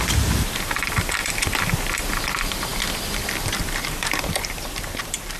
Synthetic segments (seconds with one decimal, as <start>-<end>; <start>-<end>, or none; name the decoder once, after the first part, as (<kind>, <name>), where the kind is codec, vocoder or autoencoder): 0.0-5.4 (vocoder, BigVGAN v2)